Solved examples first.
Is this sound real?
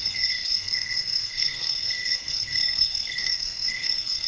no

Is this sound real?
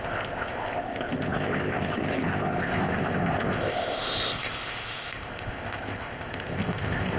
no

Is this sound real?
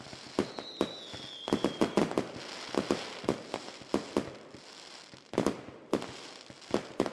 yes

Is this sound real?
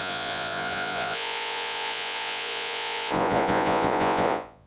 no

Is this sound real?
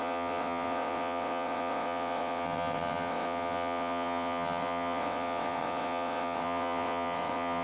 no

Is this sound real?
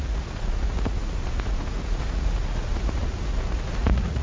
no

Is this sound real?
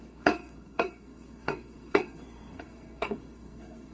no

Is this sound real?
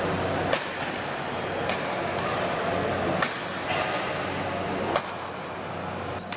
yes